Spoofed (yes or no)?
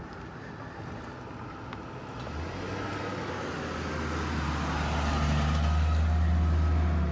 no